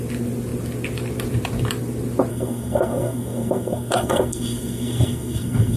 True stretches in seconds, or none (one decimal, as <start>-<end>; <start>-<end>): 0.0-2.3